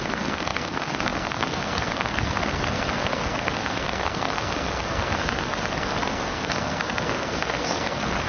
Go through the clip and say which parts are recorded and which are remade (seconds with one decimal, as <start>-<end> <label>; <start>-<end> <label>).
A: 0.0-8.3 remade